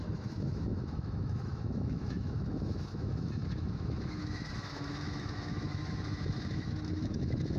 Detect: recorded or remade remade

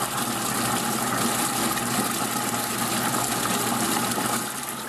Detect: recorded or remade recorded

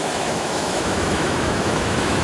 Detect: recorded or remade remade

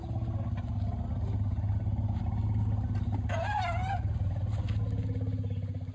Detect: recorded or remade recorded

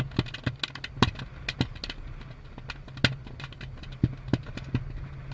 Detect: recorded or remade recorded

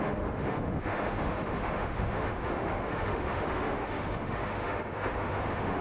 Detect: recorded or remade remade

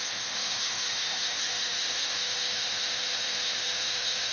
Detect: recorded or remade remade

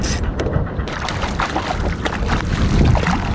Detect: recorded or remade recorded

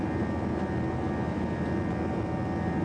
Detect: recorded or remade recorded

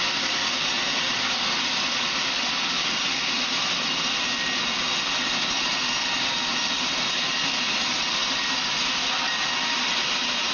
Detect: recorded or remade recorded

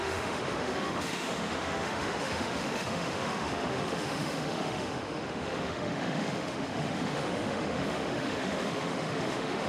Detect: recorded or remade remade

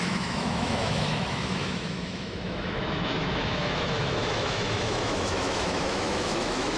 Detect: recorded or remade remade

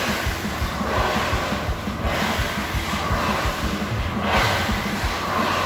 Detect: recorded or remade recorded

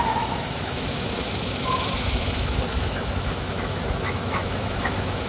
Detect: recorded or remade remade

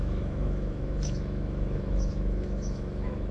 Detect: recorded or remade remade